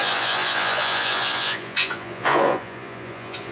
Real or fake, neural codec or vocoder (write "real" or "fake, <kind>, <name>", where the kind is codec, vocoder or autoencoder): fake, vocoder, Vocos